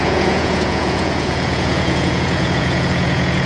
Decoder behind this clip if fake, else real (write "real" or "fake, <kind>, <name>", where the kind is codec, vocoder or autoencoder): fake, vocoder, Vocos